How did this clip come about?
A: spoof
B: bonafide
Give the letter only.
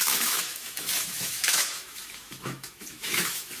A